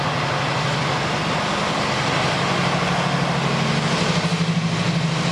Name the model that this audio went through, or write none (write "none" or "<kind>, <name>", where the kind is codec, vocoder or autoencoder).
none